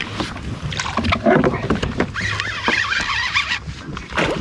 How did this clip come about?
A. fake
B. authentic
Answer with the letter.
B